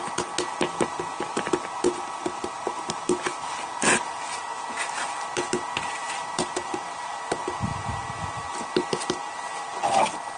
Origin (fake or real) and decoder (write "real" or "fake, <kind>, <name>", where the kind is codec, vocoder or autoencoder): real